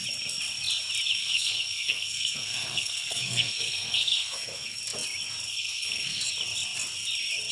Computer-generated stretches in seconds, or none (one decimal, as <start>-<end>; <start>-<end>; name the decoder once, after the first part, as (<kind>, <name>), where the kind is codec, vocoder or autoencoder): 1.2-4.8 (codec, SNAC); 5.5-6.2